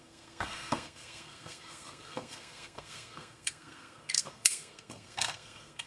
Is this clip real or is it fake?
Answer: fake